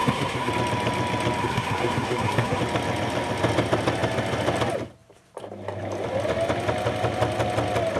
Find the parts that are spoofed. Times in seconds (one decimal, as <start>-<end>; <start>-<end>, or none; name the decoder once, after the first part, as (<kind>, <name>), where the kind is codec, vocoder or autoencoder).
0.0-0.5 (codec, SNAC); 1.4-2.6